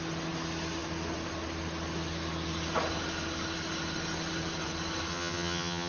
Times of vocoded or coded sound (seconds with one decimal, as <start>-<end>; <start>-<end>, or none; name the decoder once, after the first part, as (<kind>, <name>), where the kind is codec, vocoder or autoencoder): 5.1-5.9 (vocoder, HiFi-GAN)